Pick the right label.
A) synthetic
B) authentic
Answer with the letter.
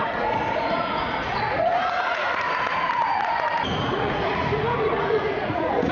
A